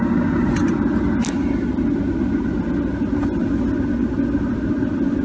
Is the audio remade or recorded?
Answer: recorded